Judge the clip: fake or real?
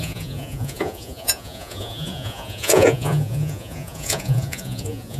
fake